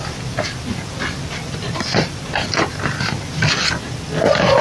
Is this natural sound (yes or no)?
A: yes